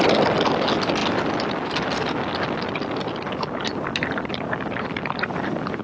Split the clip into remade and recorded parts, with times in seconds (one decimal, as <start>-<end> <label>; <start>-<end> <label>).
0.0-1.0 remade; 1.0-3.5 recorded; 3.5-5.8 remade